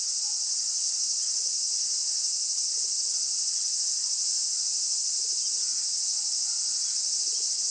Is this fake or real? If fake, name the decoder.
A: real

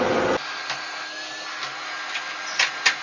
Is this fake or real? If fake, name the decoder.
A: real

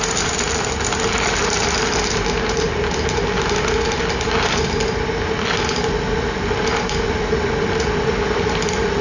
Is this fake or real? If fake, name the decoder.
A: real